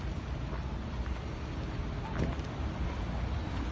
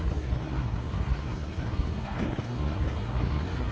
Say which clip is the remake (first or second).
second